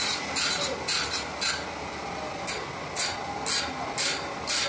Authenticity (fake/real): real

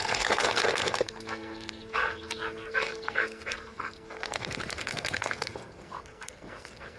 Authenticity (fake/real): fake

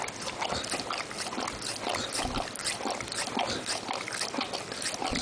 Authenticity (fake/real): real